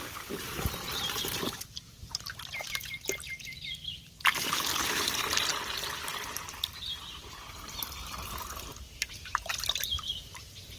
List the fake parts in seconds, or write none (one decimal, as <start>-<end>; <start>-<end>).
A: none